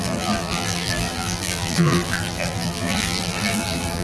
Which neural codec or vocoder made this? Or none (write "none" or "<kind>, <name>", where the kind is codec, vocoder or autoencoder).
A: vocoder, BigVGAN v2